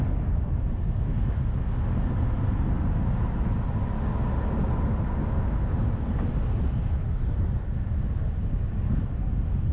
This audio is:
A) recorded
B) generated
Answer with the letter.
A